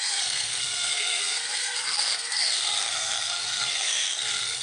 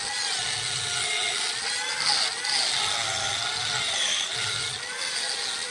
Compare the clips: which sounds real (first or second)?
second